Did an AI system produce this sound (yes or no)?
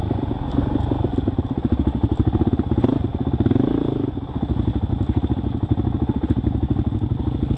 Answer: no